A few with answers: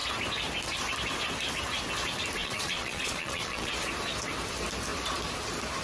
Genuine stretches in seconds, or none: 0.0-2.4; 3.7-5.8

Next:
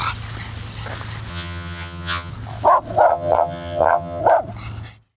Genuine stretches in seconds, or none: 0.0-1.3; 2.3-3.1; 4.2-5.2

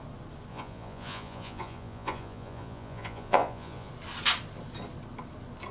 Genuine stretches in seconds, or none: 0.0-0.5; 3.9-5.7